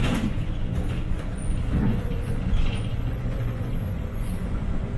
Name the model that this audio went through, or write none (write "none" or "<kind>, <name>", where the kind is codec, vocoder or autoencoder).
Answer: vocoder, Vocos